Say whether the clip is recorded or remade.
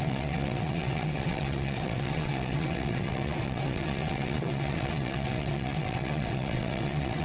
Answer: remade